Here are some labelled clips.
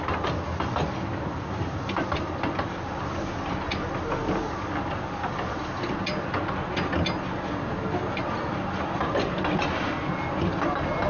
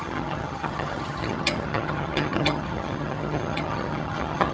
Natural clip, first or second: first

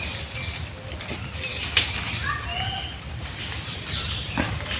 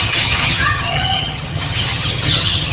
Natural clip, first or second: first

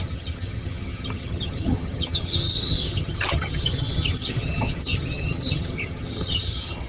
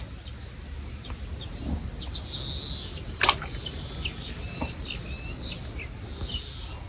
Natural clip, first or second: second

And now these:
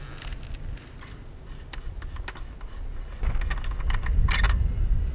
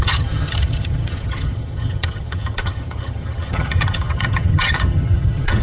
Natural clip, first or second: first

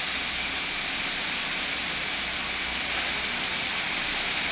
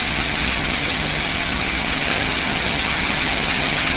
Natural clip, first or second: first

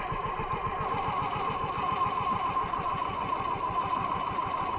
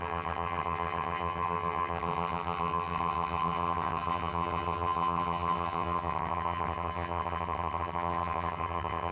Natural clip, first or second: first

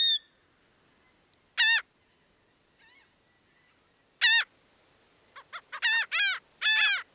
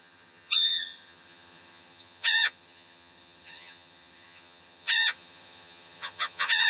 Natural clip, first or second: first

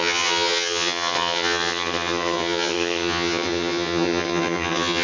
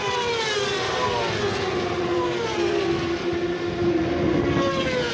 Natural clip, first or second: second